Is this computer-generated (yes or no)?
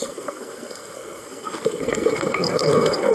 yes